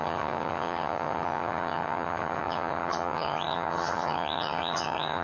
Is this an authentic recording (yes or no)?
no